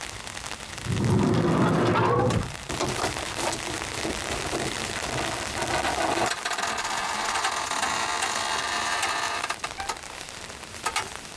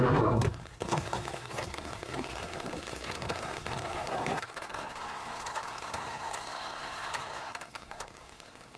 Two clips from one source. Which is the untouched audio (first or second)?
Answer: first